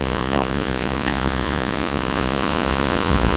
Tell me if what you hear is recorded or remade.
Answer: remade